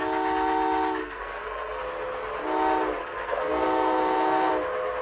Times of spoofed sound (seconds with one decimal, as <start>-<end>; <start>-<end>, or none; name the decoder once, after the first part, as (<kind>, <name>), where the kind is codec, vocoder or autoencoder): 1.0-1.8 (codec, SNAC); 3.0-4.5